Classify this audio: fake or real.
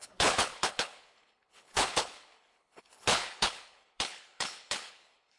fake